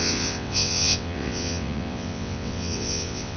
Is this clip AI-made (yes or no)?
yes